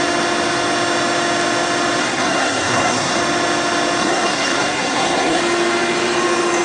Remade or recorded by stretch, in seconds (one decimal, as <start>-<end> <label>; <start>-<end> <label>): 0.0-2.0 recorded; 2.0-3.2 remade; 3.2-4.0 recorded; 4.0-5.4 remade; 5.4-6.6 recorded

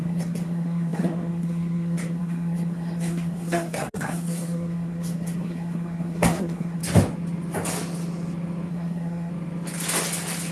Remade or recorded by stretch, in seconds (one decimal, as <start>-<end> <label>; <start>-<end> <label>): 0.0-6.8 remade; 6.8-8.7 recorded; 8.7-9.3 remade; 9.3-10.5 recorded

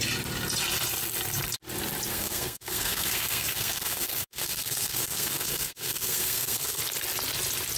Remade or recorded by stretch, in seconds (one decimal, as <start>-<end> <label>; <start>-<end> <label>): 0.0-2.1 recorded; 2.1-6.8 remade; 6.8-7.8 recorded

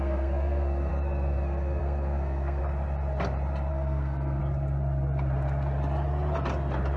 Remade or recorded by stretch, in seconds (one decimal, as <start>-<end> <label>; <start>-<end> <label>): 0.0-2.6 remade; 2.6-3.7 recorded; 3.7-4.4 remade; 4.4-7.0 recorded